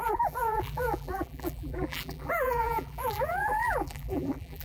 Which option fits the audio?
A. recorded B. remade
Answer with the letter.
B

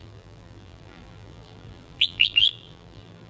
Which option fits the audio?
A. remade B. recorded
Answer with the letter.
A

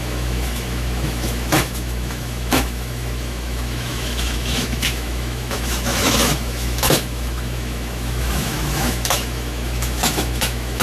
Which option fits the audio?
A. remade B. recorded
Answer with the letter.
A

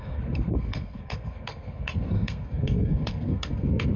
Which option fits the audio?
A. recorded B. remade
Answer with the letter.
B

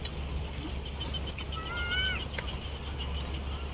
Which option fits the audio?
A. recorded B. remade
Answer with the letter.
A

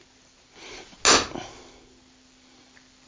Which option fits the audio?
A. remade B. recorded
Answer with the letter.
B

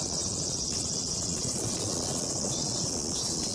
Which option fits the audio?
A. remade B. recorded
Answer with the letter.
A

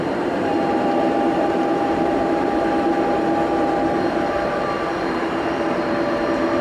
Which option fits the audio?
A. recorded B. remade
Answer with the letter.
B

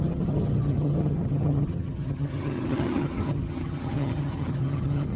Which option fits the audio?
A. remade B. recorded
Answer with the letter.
A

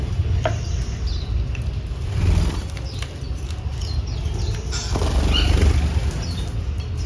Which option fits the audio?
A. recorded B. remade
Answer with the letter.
A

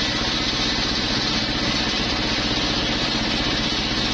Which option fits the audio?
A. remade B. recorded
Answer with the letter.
B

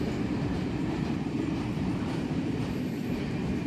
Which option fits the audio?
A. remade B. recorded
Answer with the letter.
A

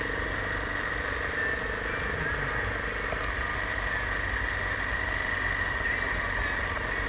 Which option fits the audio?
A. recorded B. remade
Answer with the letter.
A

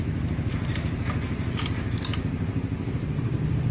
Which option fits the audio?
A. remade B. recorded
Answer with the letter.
B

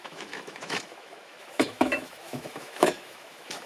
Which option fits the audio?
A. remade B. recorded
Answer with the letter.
A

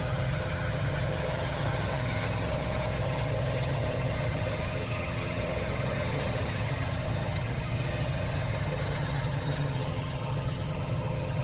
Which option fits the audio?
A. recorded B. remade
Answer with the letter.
B